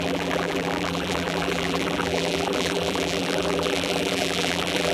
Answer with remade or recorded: remade